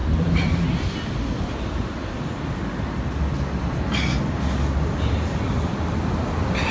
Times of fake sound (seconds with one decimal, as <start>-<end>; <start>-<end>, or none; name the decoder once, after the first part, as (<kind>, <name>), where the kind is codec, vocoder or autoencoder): 0.0-0.5 (vocoder, BigVGAN v2)